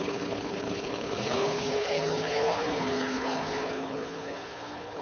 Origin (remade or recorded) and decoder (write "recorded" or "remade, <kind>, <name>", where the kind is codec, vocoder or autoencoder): remade, codec, HILCodec